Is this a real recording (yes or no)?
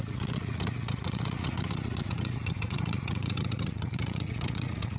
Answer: no